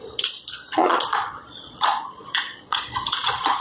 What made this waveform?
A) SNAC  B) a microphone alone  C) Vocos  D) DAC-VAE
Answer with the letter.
C